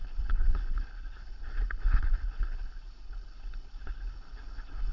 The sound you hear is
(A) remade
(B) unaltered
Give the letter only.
A